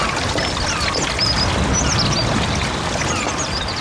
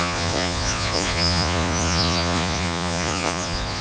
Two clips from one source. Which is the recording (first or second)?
first